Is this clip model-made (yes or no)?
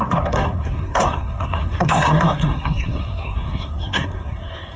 yes